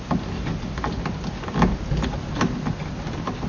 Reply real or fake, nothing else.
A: real